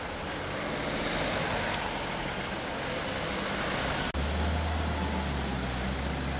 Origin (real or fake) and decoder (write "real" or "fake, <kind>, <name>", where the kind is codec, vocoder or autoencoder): real